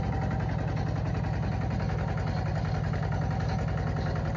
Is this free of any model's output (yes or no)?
yes